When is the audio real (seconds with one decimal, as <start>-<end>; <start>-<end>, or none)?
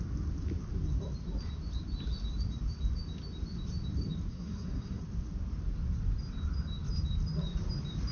0.0-4.3; 5.0-8.1